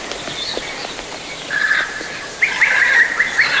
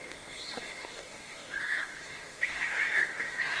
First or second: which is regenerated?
second